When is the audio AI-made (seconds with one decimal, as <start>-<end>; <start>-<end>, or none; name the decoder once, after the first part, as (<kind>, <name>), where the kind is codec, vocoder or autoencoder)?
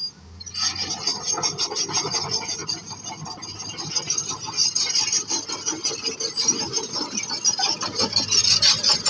none